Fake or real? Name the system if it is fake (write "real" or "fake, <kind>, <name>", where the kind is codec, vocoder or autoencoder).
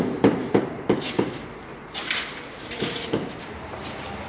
fake, vocoder, BigVGAN v2